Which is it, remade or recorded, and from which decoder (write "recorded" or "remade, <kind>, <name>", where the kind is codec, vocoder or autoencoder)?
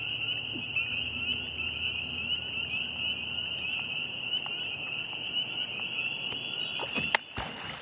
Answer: recorded